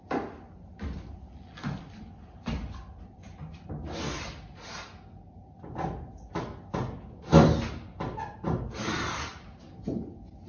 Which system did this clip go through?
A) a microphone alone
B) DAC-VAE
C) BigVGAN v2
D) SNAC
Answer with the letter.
A